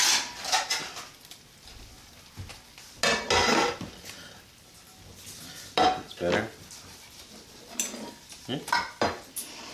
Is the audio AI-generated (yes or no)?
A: no